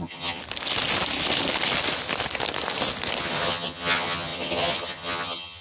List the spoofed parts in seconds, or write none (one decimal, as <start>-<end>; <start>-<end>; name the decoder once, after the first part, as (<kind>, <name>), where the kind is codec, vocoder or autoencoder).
0.0-0.4 (vocoder, HiFi-GAN); 3.2-5.6